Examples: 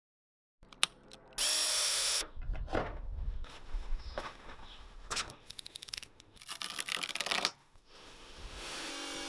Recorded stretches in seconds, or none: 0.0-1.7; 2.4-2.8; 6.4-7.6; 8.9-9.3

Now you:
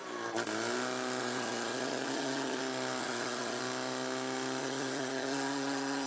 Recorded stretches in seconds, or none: 0.0-1.2; 2.6-3.0; 3.6-4.6